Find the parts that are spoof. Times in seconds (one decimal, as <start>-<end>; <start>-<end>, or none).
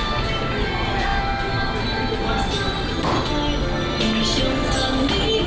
none